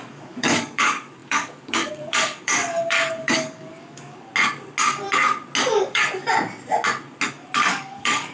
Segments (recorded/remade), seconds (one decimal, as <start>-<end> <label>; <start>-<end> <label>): 0.0-4.3 remade; 4.3-5.7 recorded; 5.7-6.2 remade; 6.2-7.3 recorded; 7.3-8.3 remade